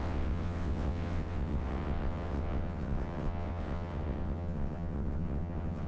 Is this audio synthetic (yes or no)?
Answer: yes